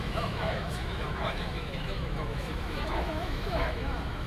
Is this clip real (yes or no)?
no